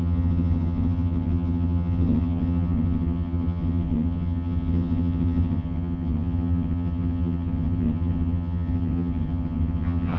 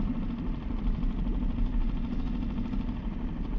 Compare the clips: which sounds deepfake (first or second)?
first